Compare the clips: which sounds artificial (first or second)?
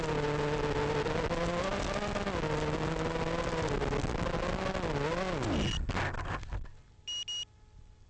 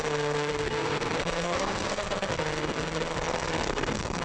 second